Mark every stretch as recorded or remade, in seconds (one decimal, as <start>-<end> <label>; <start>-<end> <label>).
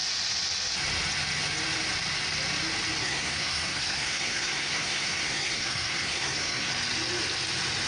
0.0-3.0 recorded; 3.0-6.7 remade; 6.7-7.9 recorded